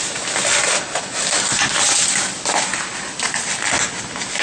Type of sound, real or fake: real